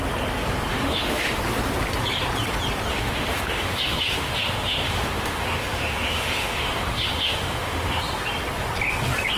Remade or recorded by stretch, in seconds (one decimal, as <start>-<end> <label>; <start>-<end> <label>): 0.0-0.7 recorded; 0.7-1.4 remade; 1.4-2.9 recorded; 2.9-8.0 remade; 8.0-9.4 recorded